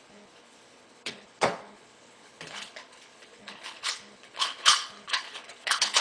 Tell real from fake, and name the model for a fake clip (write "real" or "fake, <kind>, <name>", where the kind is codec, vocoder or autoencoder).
fake, codec, HILCodec